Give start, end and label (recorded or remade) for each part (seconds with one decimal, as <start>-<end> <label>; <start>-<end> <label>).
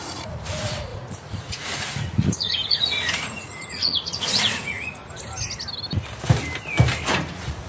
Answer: 0.0-5.0 remade; 5.0-7.1 recorded; 7.1-7.7 remade